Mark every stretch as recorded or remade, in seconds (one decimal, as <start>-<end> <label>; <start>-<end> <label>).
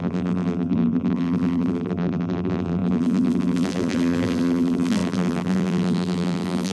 0.0-6.7 remade